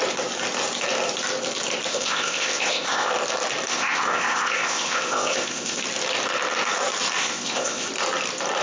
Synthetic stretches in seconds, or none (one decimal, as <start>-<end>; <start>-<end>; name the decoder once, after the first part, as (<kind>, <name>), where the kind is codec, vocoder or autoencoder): 1.9-3.1 (codec, ZipCodec); 3.7-5.8; 7.2-7.9